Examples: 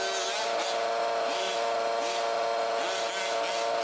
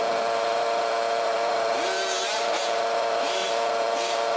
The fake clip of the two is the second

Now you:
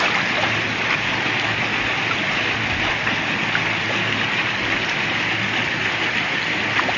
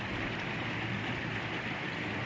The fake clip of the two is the second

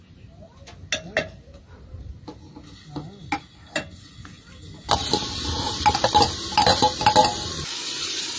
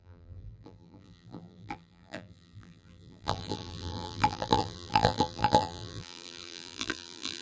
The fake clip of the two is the second